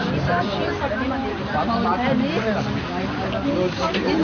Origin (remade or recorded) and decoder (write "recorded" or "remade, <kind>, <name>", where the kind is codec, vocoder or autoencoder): recorded